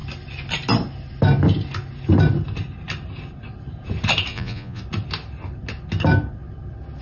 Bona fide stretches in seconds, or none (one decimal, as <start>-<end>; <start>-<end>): 0.0-4.3; 4.8-7.0